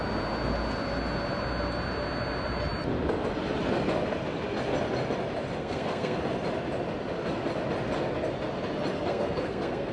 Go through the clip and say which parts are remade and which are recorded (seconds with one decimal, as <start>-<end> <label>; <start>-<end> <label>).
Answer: 0.0-5.6 recorded; 5.6-6.2 remade; 6.2-9.1 recorded; 9.1-9.9 remade